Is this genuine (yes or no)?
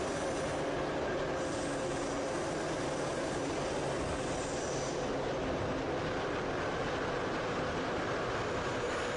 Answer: yes